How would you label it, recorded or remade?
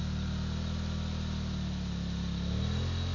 recorded